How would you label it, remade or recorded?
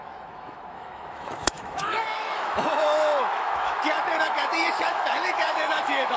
remade